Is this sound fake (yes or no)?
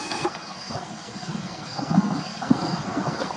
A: yes